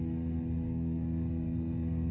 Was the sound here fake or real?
fake